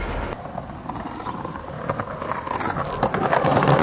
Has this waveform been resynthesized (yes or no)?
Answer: no